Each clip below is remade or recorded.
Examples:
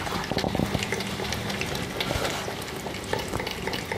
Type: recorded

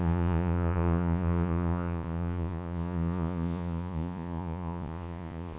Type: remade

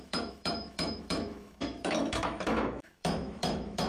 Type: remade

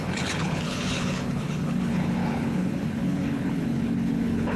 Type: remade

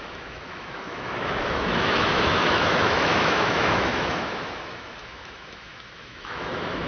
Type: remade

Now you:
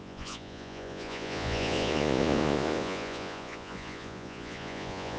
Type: remade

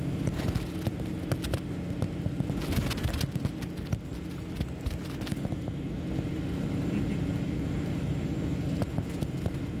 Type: recorded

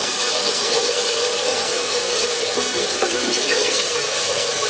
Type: remade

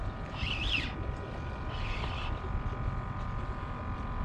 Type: remade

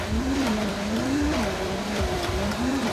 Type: remade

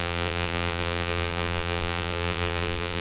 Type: remade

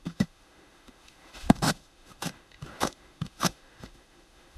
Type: remade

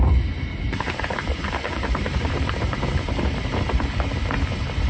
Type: remade